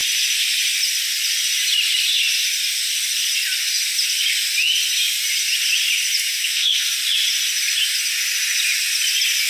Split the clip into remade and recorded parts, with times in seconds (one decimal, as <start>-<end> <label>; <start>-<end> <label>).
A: 0.0-6.3 recorded; 6.3-6.9 remade; 6.9-9.5 recorded